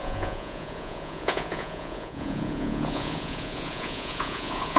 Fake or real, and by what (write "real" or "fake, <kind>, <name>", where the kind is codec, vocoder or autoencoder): fake, vocoder, Vocos